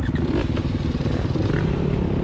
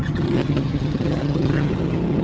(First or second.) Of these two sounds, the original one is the first